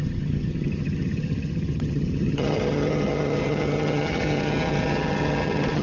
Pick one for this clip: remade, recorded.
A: remade